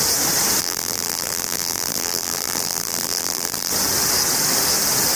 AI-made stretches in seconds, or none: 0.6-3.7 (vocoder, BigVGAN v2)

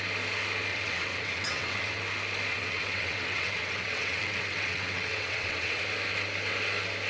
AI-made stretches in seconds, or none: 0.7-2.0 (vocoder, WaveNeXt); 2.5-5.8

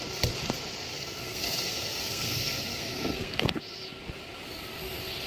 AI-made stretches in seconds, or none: 0.9-3.6 (codec, SNAC)

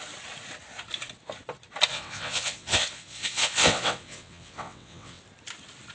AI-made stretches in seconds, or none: 1.9-5.2 (vocoder, WaveNeXt)